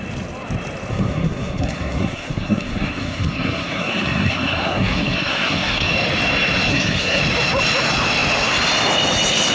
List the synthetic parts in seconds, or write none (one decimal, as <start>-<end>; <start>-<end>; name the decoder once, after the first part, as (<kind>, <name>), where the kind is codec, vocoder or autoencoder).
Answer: 0.9-5.9 (codec, SNAC); 6.7-7.2